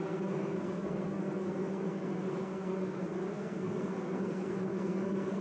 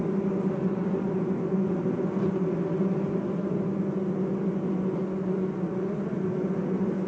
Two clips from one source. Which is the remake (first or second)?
first